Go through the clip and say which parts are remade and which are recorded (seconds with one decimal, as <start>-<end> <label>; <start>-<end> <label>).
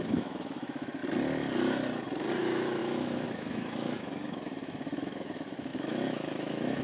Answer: 0.0-1.0 remade; 1.0-2.4 recorded; 2.4-6.8 remade